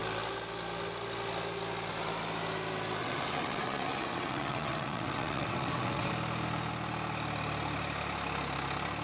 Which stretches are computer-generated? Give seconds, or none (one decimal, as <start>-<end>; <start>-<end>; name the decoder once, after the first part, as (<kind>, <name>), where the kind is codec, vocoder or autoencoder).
3.0-6.1 (vocoder, WaveNeXt)